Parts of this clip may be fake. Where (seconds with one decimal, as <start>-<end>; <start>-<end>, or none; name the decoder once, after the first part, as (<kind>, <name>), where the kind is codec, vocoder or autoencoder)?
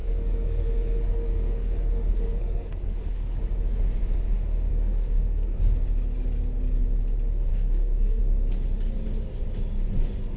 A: 0.0-3.4 (codec, SNAC); 4.7-5.6; 7.5-8.2